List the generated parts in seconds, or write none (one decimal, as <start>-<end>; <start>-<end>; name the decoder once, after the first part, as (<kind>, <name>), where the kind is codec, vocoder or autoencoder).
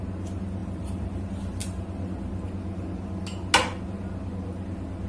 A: 0.6-1.2 (vocoder, BigVGAN v2)